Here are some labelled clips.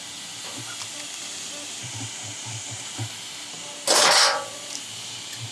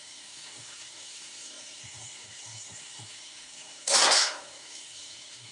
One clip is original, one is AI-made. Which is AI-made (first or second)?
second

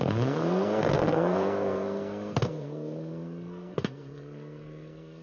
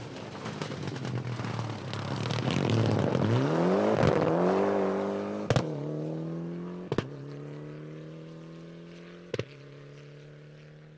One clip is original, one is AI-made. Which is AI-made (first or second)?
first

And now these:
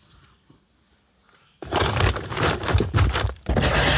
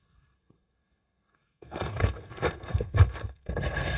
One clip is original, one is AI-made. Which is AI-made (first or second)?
second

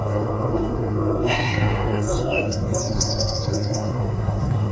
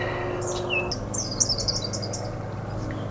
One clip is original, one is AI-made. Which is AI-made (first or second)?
first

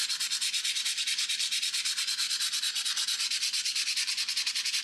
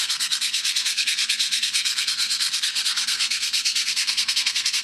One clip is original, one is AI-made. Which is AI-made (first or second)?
second